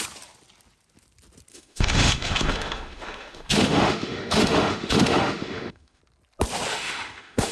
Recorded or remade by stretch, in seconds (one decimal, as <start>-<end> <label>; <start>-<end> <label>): 0.0-1.5 recorded; 1.5-6.0 remade; 6.0-6.7 recorded; 6.7-7.5 remade